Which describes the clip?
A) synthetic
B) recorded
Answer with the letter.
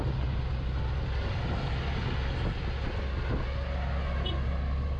B